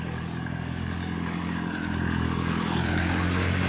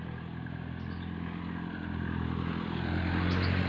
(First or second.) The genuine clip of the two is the second